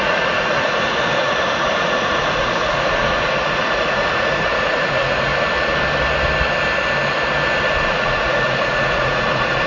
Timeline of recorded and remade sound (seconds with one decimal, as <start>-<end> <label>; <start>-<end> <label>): 0.0-5.3 remade; 5.3-7.9 recorded; 7.9-9.7 remade